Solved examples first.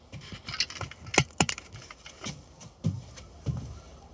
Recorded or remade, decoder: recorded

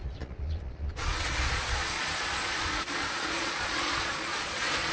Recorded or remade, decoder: remade, vocoder, Vocos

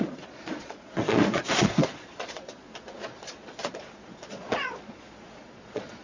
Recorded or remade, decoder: remade, vocoder, Vocos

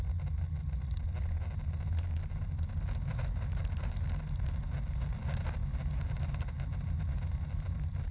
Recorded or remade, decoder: recorded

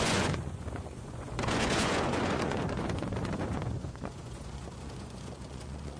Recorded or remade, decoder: remade, vocoder, Vocos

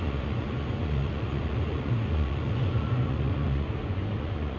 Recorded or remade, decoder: remade, vocoder, Vocos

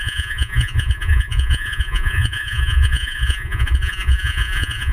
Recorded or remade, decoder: remade, vocoder, Vocos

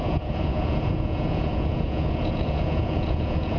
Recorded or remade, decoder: remade, vocoder, Vocos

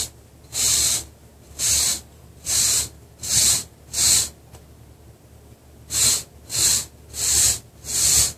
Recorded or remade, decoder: recorded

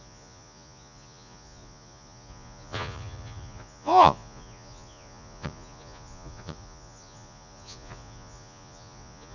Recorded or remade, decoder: remade, vocoder, Vocos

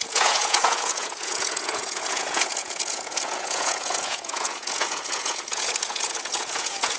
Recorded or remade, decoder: remade, vocoder, Vocos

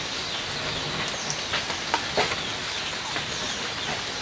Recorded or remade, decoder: recorded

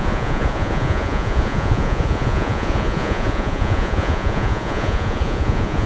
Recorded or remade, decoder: remade, vocoder, Vocos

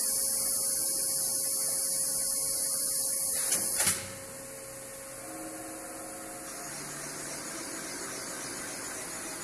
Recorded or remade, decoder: recorded